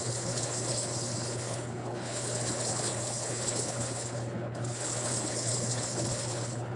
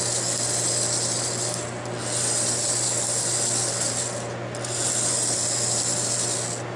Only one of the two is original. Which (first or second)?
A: second